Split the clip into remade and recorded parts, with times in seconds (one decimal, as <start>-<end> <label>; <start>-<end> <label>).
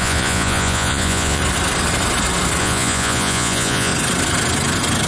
0.0-1.4 remade; 1.4-2.6 recorded; 2.6-3.9 remade; 3.9-5.1 recorded